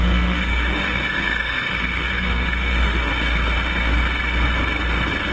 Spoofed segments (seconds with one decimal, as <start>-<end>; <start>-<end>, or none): 0.0-3.1